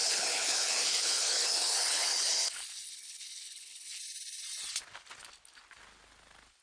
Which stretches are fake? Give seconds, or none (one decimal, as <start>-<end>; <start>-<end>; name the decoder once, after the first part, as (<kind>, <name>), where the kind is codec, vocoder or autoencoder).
0.0-4.0 (codec, HILCodec)